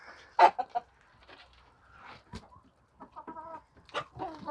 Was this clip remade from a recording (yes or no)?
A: no